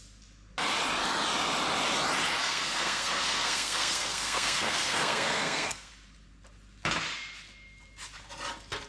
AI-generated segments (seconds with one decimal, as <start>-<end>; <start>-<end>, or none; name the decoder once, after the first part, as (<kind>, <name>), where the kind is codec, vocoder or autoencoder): 2.4-5.9 (codec, SNAC)